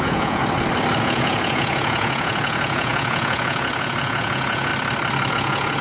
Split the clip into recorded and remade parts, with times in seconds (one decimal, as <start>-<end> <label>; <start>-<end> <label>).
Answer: 0.0-0.4 remade; 0.4-1.0 recorded; 1.0-4.7 remade; 4.7-5.3 recorded; 5.3-5.8 remade